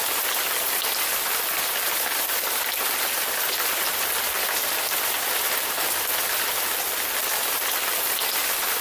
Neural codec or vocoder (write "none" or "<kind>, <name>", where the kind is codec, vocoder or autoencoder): none